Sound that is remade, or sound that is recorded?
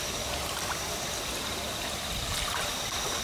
recorded